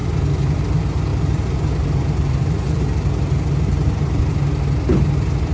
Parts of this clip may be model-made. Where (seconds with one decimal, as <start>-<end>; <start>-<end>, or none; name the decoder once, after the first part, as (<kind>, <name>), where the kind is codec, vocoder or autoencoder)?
0.0-0.6 (vocoder, BigVGAN v2); 1.1-2.8; 3.7-4.2

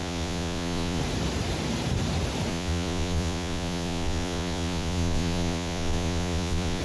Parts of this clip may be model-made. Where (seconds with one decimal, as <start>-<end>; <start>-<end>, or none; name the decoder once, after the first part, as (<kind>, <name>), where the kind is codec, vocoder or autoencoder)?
0.0-1.0 (vocoder, Vocos); 2.5-6.8

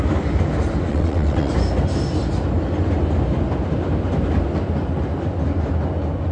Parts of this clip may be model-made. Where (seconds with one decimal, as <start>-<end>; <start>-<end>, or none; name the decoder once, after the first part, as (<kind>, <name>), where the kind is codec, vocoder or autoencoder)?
0.9-1.5 (vocoder, WaveNeXt)

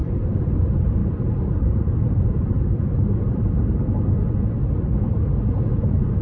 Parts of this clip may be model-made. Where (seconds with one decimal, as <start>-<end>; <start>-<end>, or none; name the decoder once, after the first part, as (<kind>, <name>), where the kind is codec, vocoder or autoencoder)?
0.0-0.5 (vocoder, BigVGAN v2); 1.0-4.1

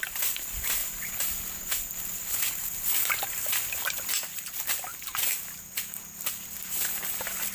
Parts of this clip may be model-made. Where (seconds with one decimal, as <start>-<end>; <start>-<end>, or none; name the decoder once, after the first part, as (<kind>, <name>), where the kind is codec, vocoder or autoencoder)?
none

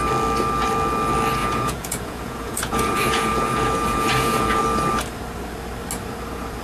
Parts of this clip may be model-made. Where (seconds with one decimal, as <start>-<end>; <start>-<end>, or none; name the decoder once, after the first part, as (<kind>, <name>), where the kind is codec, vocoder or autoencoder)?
1.4-4.6 (vocoder, Vocos)